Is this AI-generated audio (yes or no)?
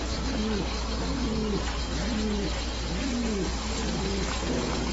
no